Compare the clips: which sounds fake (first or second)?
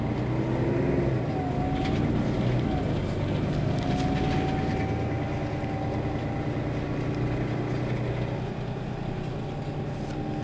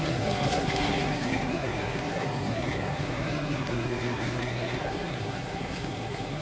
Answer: second